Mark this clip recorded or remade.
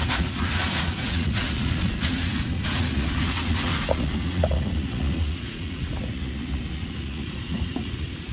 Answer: remade